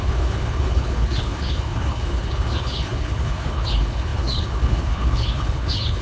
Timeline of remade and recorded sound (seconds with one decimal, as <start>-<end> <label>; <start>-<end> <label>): 0.0-6.0 remade